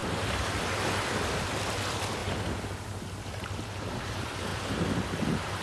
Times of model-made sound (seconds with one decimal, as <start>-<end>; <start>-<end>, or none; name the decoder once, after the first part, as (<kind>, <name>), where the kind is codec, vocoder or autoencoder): 0.0-2.2 (vocoder, BigVGAN v2); 3.2-4.5